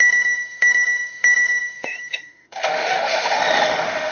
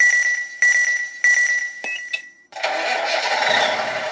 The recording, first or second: second